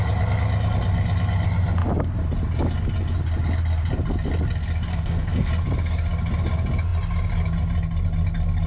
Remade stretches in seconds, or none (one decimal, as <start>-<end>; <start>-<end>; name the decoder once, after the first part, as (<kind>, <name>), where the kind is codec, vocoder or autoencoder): 4.9-5.5 (codec, SNAC)